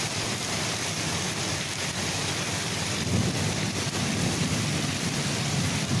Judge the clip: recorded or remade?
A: remade